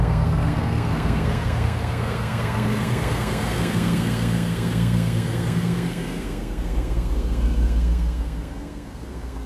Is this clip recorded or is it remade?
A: remade